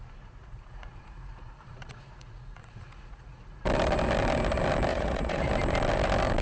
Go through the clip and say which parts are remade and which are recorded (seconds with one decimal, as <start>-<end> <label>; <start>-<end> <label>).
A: 0.0-0.4 recorded; 0.4-3.6 remade; 3.6-4.9 recorded; 4.9-5.5 remade; 5.5-6.4 recorded